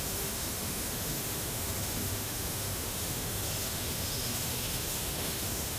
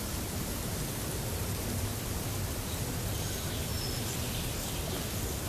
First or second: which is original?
second